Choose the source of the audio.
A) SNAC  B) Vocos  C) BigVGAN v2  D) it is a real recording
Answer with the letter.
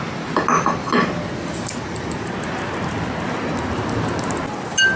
D